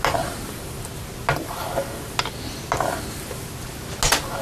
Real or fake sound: real